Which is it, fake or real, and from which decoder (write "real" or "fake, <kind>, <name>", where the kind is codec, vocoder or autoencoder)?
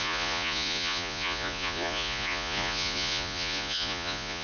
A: fake, vocoder, Vocos